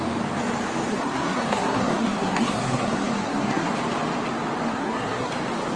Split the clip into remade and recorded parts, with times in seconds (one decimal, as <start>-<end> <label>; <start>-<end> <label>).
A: 0.0-0.9 recorded; 0.9-3.7 remade; 3.7-4.7 recorded; 4.7-5.3 remade; 5.3-5.8 recorded